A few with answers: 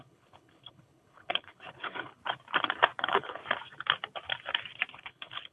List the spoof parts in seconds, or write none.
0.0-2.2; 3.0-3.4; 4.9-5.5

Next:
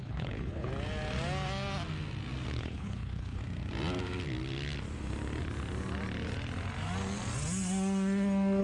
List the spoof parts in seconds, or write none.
0.0-0.7; 2.6-3.4